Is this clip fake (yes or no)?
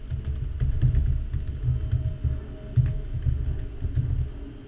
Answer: no